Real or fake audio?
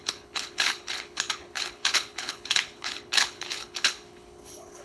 fake